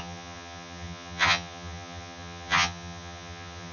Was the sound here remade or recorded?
remade